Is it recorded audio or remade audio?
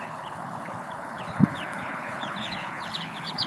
remade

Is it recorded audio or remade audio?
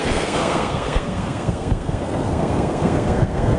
remade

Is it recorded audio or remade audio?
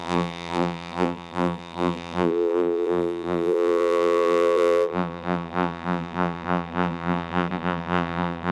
remade